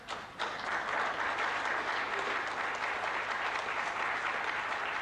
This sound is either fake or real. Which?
real